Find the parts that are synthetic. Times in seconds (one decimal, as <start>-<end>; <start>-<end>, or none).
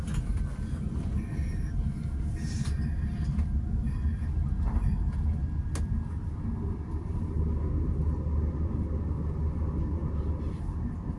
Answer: none